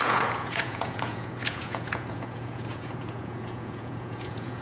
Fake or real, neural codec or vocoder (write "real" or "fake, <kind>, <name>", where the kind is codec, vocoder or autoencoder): fake, vocoder, Vocos